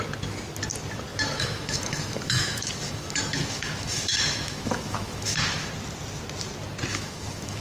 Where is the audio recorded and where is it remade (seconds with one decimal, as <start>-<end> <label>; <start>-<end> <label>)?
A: 0.0-1.1 recorded; 1.1-5.7 remade; 5.7-6.9 recorded; 6.9-7.6 remade